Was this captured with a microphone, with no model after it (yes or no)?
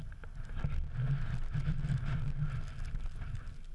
yes